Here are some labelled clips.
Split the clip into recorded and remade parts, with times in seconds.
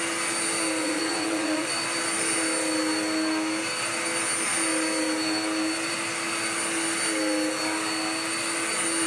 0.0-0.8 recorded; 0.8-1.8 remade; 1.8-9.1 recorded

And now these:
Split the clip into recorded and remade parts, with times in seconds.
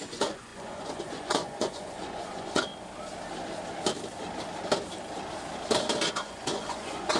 0.0-2.7 remade; 2.7-6.1 recorded; 6.1-7.2 remade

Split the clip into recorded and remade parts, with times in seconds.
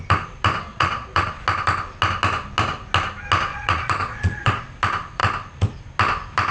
0.0-0.7 recorded; 0.7-1.3 remade; 1.3-3.5 recorded; 3.5-4.6 remade; 4.6-6.5 recorded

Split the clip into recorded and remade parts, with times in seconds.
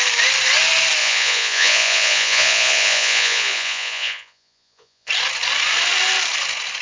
0.0-1.0 recorded; 1.0-5.1 remade; 5.1-6.8 recorded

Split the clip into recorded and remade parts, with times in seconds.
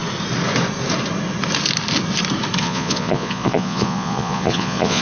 0.0-2.6 recorded; 2.6-5.0 remade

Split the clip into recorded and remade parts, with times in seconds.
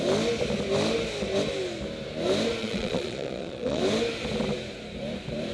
0.0-2.6 recorded; 2.6-3.8 remade; 3.8-5.5 recorded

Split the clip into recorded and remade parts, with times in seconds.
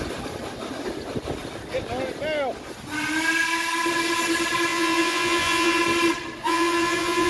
0.0-4.7 recorded; 4.7-5.8 remade; 5.8-6.4 recorded; 6.4-7.3 remade